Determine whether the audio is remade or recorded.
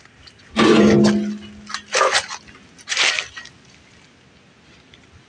recorded